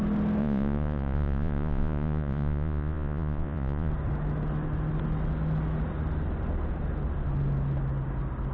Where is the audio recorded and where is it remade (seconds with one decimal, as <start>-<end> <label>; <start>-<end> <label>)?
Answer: 0.0-0.4 recorded; 0.4-3.9 remade; 3.9-8.5 recorded